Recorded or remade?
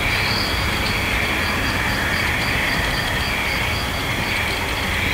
recorded